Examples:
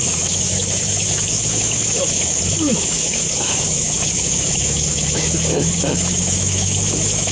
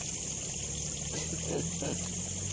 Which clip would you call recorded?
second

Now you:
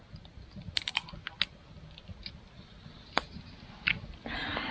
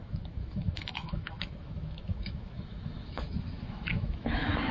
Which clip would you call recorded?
first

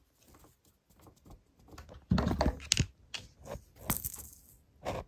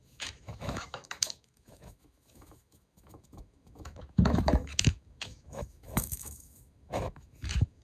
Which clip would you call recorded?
first